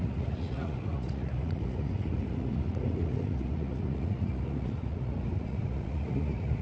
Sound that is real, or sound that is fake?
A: fake